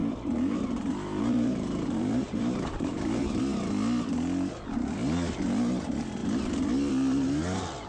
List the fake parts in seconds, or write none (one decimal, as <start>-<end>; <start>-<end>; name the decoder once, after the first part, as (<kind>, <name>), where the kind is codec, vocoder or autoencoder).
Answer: 0.0-3.4 (vocoder, BigVGAN v2)